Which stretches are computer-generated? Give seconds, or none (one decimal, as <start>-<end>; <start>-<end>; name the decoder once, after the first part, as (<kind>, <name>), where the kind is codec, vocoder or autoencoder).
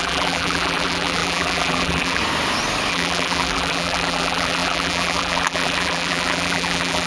0.0-2.2 (vocoder, BigVGAN v2); 2.9-7.1